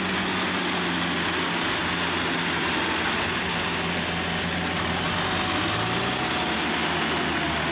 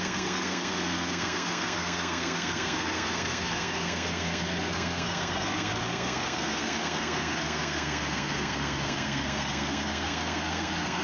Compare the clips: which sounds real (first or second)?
first